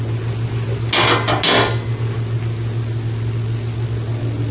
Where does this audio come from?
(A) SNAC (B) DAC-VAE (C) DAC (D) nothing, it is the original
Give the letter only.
D